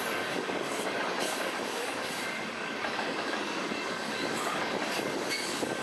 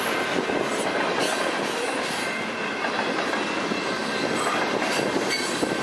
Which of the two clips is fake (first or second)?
first